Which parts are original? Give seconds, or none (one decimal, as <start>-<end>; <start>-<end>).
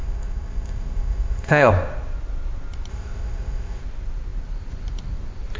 1.7-2.9; 3.8-5.6